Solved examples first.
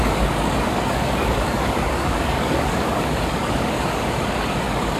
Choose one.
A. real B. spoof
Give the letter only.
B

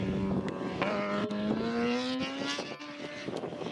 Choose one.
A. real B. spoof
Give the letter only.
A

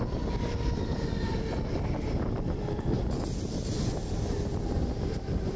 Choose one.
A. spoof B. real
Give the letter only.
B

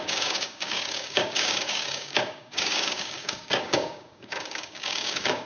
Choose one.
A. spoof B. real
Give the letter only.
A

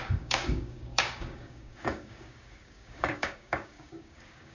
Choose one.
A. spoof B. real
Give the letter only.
A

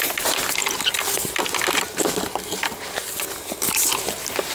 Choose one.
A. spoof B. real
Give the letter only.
B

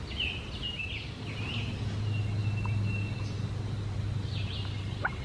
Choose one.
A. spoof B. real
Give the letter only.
B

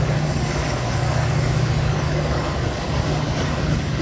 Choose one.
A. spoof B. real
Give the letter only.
A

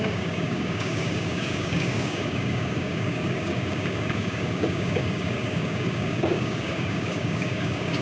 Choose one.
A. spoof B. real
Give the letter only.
A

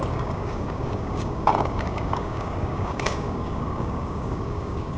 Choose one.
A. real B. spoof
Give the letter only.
B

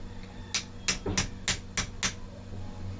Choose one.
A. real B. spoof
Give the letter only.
A